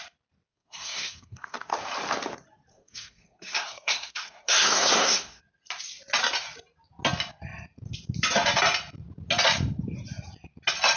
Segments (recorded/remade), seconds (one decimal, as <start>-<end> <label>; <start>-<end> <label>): 0.0-0.5 recorded; 0.5-1.7 remade; 1.7-2.7 recorded; 2.7-5.4 remade; 5.4-11.0 recorded

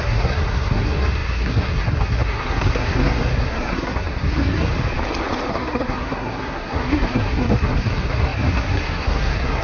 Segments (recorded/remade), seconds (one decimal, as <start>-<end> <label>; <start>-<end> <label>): 0.0-4.7 remade; 4.7-5.5 recorded; 5.5-9.6 remade

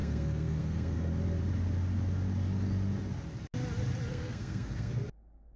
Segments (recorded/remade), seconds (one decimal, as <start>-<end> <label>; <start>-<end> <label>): 0.0-1.1 remade; 1.1-4.1 recorded; 4.1-5.0 remade; 5.0-5.6 recorded

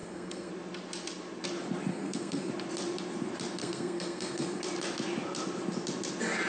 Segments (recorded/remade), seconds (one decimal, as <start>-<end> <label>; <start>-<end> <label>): 0.0-0.5 remade; 0.5-1.9 recorded; 1.9-2.5 remade; 2.5-3.6 recorded; 3.6-4.6 remade; 4.6-6.5 recorded

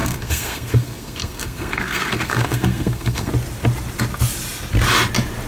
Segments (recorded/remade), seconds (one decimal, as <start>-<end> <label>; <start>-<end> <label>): 0.0-3.3 remade; 3.3-5.5 recorded

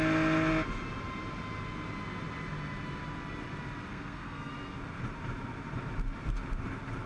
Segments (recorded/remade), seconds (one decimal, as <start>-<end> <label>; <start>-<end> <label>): 0.0-3.9 recorded; 3.9-4.5 remade; 4.5-7.1 recorded

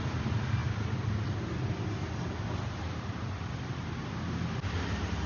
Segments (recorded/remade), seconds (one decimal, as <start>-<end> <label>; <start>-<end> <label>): 0.0-5.3 recorded

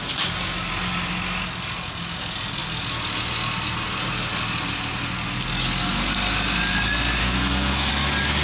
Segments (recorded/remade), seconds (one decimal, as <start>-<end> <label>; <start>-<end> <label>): 0.0-7.2 recorded; 7.2-7.9 remade; 7.9-8.4 recorded